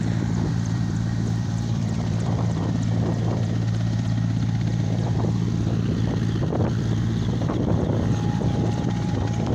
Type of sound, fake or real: fake